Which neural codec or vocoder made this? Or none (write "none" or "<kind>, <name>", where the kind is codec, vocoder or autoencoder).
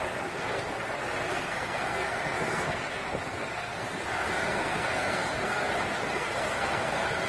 codec, SNAC